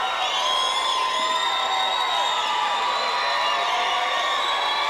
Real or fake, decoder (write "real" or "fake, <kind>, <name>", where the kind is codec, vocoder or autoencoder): real